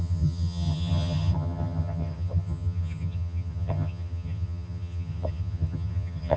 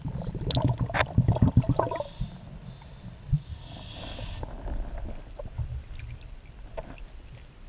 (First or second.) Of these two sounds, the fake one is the first